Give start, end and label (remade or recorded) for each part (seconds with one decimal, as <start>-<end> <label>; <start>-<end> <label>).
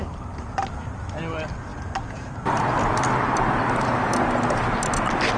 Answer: 0.0-5.4 recorded